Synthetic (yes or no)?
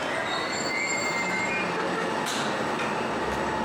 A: no